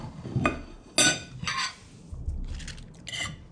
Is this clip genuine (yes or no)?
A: yes